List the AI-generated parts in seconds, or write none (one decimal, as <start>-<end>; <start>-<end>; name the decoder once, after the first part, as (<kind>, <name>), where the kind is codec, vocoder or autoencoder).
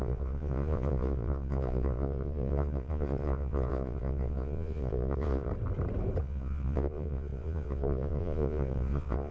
0.0-5.5 (vocoder, Vocos); 6.2-9.3